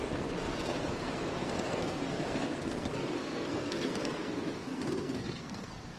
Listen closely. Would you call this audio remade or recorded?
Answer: remade